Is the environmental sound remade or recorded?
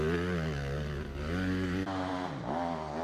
recorded